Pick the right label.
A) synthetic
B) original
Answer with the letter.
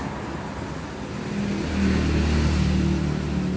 B